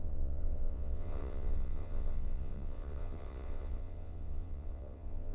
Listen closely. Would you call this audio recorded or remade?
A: remade